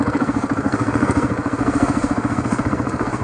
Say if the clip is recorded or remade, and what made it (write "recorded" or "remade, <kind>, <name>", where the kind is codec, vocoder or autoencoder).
remade, codec, SNAC